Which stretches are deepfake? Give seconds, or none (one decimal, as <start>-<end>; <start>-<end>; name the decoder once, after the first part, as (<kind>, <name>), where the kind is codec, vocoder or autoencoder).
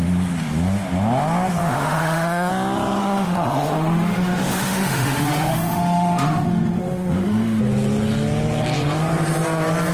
1.6-2.5 (autoencoder, DAC-VAE); 3.0-7.6